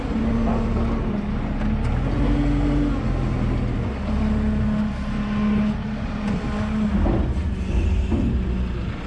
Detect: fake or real real